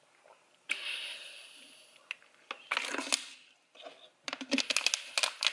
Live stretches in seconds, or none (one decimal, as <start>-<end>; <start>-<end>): 0.0-5.5